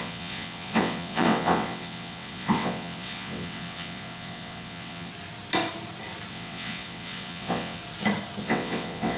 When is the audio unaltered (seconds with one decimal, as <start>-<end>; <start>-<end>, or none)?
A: 5.1-6.3; 7.8-8.4